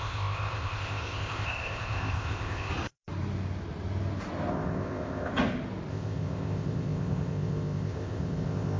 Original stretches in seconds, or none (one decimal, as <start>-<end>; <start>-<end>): 2.7-4.5; 5.3-5.9